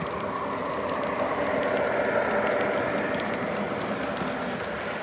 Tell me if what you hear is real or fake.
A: real